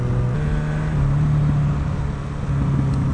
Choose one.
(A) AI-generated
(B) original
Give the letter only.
B